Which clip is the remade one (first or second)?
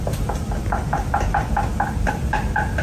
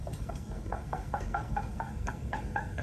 second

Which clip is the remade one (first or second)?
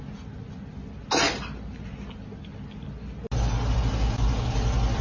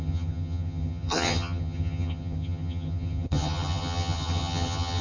second